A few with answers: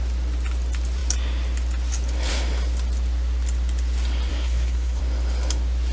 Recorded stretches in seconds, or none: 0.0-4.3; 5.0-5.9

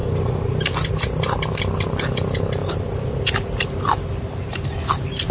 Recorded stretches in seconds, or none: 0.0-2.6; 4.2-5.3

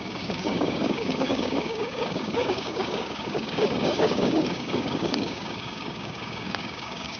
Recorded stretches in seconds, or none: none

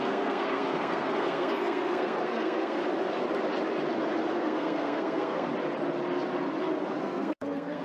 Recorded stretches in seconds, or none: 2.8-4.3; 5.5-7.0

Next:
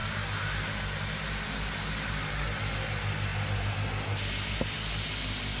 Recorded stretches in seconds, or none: 0.0-5.6

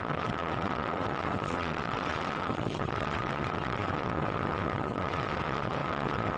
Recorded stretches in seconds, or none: none

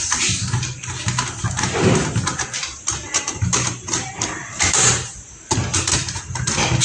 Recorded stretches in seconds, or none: 0.0-3.1; 5.3-6.8